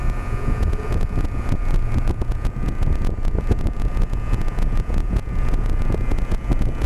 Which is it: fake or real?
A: fake